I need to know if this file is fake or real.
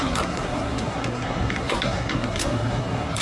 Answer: fake